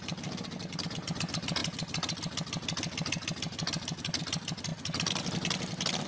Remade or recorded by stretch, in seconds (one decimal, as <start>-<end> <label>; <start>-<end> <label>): 0.0-6.1 recorded